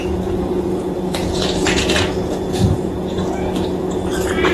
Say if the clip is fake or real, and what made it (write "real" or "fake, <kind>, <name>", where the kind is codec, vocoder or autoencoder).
fake, vocoder, Vocos